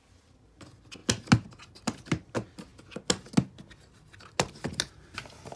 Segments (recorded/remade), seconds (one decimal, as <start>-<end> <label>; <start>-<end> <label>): 0.0-5.6 recorded